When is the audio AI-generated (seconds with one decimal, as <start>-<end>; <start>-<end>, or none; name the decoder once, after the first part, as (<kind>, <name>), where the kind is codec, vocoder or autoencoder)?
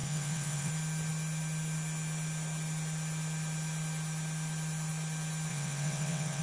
0.0-0.7 (vocoder, WaveNeXt); 5.5-6.4